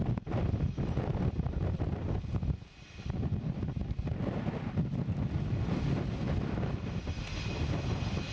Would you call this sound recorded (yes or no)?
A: yes